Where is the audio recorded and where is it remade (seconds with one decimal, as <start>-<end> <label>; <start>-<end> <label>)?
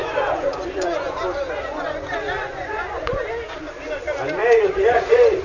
0.0-3.2 remade; 3.2-4.4 recorded; 4.4-5.4 remade